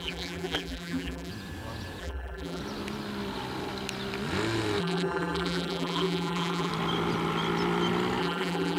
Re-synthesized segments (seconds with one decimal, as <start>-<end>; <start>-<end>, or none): 0.0-1.3; 2.0-2.6; 4.8-6.7; 8.2-8.8